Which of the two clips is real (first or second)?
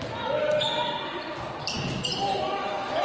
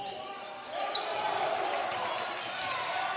first